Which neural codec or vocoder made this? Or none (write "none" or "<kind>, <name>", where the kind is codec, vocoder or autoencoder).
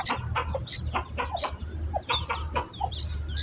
none